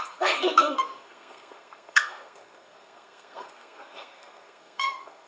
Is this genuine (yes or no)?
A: no